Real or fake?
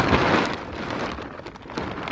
real